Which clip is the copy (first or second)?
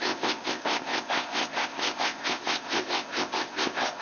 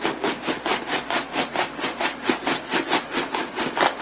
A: first